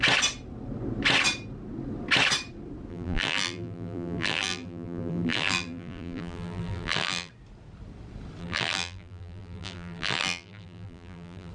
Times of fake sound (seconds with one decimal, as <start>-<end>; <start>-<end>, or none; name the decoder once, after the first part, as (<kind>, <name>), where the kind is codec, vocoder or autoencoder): 2.9-7.3 (vocoder, BigVGAN v2); 8.4-11.5

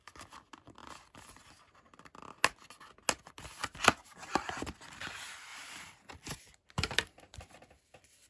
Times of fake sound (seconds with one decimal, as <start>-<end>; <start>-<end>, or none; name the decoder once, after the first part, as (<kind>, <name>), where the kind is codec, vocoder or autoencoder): 0.0-0.8 (vocoder, BigVGAN v2); 3.3-8.3

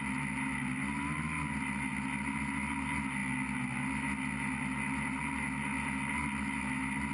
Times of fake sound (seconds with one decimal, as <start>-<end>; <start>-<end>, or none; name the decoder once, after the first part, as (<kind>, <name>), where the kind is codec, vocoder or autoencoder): none

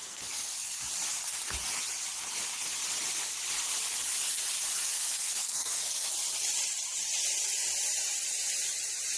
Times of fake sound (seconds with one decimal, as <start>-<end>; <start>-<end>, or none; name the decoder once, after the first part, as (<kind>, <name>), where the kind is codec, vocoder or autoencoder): 0.0-0.8 (codec, SNAC); 4.9-6.1

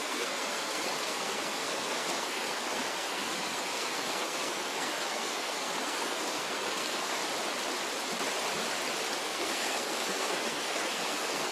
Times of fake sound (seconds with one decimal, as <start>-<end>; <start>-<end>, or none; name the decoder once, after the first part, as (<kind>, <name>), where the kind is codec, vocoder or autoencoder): 0.0-7.2 (codec, SNAC); 9.2-11.5

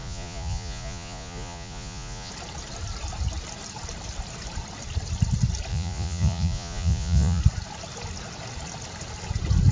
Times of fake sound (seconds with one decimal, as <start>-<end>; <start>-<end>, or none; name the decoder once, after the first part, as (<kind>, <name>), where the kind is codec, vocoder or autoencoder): 0.0-2.3 (vocoder, Vocos); 5.7-7.4